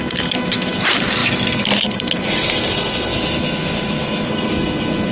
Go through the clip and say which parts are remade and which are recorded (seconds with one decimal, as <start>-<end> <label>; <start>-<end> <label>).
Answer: 0.0-3.1 recorded; 3.1-4.3 remade; 4.3-5.1 recorded